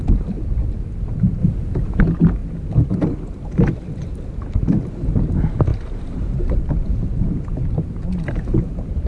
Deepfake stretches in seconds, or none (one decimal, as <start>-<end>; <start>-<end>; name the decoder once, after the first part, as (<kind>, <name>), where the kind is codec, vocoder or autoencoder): 1.4-2.0 (vocoder, BigVGAN v2); 5.7-6.7